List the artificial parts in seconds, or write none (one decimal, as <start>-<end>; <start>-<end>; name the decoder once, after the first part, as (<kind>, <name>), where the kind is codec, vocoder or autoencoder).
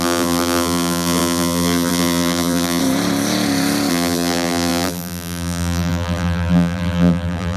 0.0-2.8 (vocoder, BigVGAN v2); 3.9-7.6